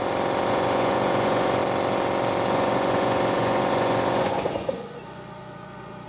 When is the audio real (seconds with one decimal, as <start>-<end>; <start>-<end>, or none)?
0.0-0.5; 1.6-2.5